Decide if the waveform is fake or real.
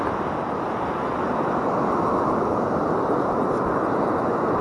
real